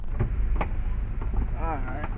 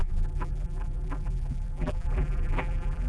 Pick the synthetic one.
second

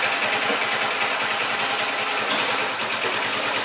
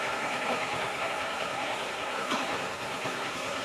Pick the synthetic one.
second